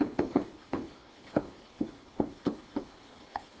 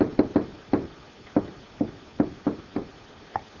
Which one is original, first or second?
second